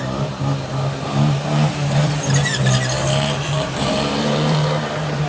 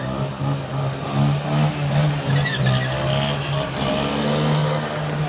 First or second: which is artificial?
first